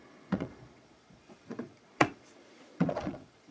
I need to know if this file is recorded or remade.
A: remade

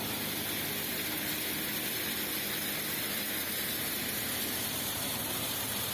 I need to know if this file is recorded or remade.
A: recorded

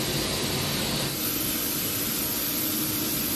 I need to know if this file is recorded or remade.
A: recorded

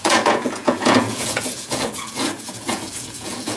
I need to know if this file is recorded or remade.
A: remade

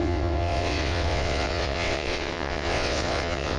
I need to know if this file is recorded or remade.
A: remade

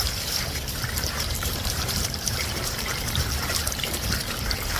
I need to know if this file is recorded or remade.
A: remade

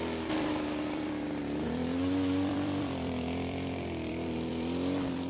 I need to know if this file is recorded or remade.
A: remade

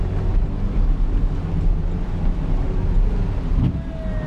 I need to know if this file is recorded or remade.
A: recorded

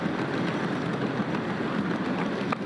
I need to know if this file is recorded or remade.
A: recorded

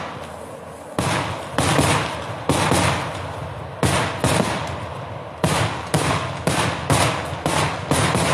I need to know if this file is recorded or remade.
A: recorded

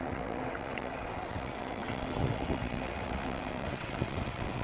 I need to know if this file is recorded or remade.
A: remade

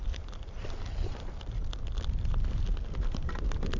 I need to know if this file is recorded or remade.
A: recorded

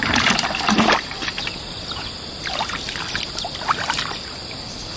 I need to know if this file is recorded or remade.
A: remade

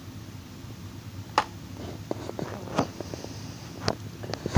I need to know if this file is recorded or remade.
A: recorded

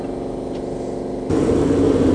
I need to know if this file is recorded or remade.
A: recorded